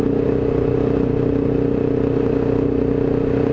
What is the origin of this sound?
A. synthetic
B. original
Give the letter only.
B